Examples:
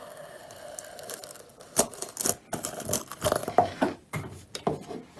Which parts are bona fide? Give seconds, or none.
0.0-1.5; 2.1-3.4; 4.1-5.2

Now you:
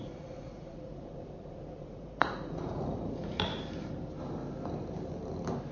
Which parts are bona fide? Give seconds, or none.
3.5-5.7

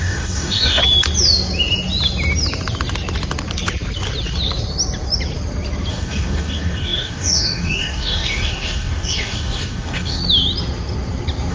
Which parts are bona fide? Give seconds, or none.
0.8-5.9; 10.2-11.5

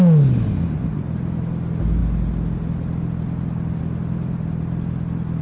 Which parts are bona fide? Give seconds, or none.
0.0-5.4

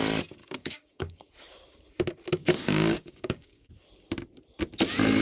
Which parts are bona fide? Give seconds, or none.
0.0-0.4; 1.3-2.4; 3.7-5.2

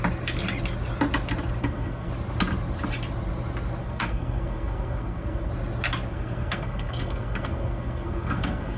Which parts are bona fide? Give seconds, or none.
0.0-1.6; 2.1-3.8; 5.5-6.1